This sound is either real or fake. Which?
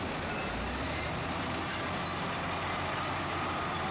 real